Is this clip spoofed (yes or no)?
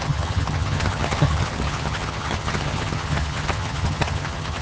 yes